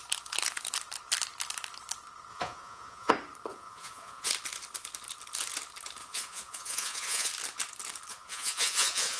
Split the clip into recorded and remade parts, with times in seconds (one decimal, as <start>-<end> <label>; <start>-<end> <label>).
0.0-2.3 recorded; 2.3-3.1 remade; 3.1-3.5 recorded; 3.5-4.3 remade; 4.3-6.0 recorded; 6.0-7.3 remade; 7.3-8.1 recorded; 8.1-9.2 remade